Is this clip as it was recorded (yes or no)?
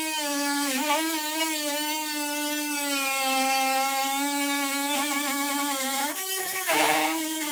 no